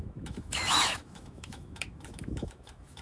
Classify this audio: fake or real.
fake